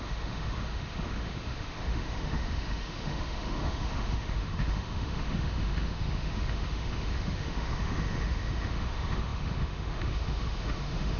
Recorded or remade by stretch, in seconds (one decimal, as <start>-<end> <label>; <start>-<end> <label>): 0.0-11.2 remade